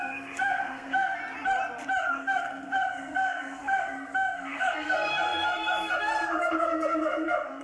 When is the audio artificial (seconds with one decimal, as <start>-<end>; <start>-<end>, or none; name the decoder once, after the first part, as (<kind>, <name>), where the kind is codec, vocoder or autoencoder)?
0.0-1.2 (codec, SNAC); 2.1-7.6

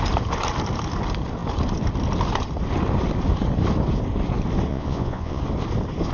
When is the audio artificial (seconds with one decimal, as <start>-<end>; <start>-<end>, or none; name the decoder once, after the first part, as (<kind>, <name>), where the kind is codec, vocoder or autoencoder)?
4.7-5.4 (vocoder, Vocos)

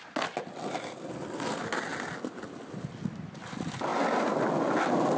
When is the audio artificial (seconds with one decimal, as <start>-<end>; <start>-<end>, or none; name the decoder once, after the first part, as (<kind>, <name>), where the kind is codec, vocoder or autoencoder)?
none

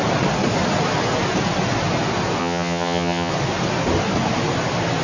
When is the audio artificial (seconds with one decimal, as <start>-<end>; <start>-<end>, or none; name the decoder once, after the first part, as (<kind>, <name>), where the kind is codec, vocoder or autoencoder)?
2.4-3.3 (vocoder, HiFi-GAN)